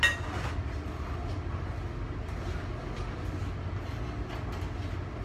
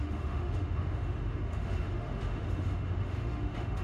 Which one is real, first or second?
first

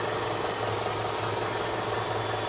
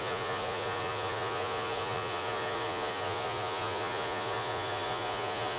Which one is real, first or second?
first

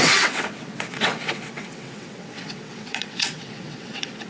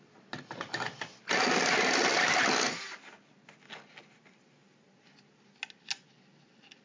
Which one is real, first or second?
second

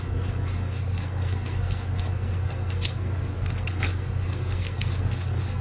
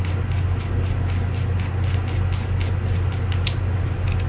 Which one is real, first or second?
second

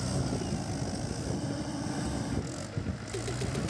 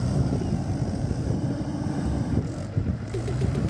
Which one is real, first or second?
first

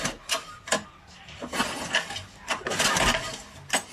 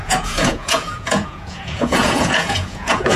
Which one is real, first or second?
first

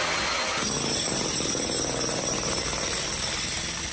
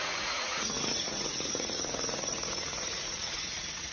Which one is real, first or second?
first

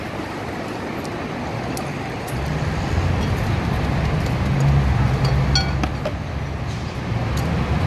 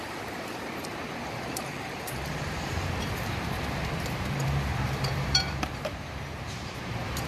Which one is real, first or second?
first